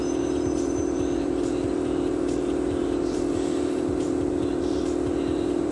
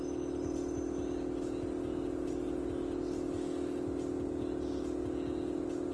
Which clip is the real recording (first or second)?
second